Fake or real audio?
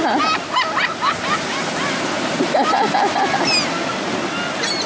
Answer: real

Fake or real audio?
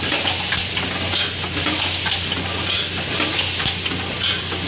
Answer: real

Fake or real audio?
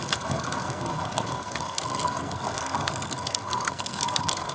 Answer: fake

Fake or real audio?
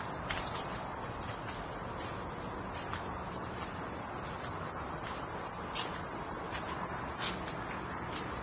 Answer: real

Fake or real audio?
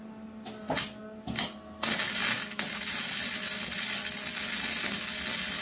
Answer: real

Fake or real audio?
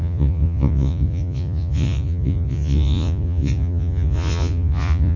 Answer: fake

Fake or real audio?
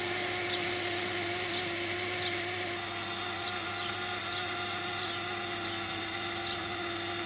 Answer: real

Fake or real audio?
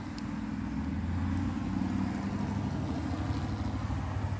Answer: real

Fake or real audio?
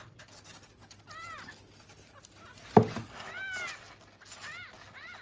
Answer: real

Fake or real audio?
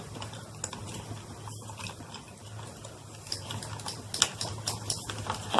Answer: real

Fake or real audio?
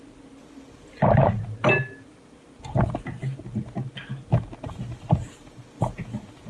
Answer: real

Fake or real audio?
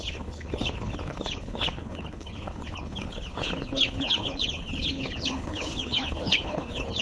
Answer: fake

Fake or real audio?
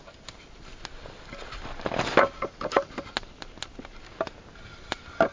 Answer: real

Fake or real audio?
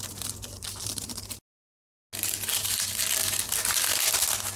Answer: real